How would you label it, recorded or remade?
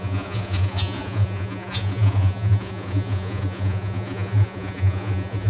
remade